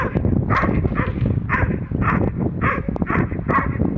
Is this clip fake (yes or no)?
yes